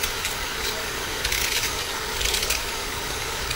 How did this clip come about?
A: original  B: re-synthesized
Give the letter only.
B